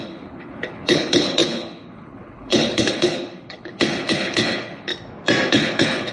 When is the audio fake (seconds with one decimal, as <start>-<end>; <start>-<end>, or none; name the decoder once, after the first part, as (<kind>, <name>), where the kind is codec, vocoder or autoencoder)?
0.0-4.9 (codec, HILCodec); 5.5-6.1